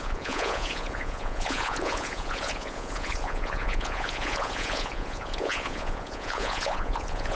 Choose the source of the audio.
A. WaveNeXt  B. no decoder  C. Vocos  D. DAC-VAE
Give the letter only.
C